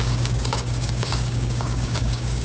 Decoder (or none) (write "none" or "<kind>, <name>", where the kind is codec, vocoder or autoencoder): codec, DAC